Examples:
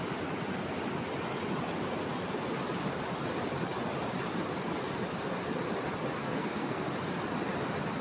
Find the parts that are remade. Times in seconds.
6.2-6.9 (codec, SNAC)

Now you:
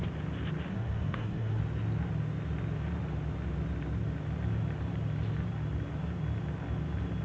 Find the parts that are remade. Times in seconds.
0.7-1.6 (codec, SNAC)

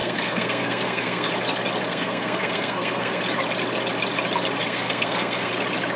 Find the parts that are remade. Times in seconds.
0.0-1.3 (codec, SNAC); 1.9-3.2; 4.6-5.5

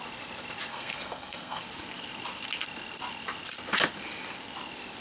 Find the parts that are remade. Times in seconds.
0.7-1.6 (codec, SNAC)

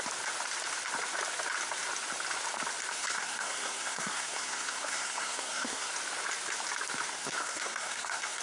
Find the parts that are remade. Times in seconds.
2.9-5.9 (codec, SNAC); 7.1-8.4